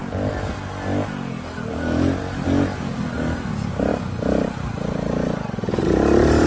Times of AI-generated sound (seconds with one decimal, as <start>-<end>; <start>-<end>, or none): none